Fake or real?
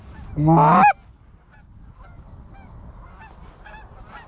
real